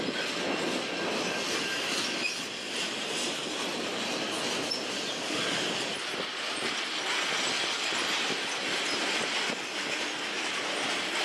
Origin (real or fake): real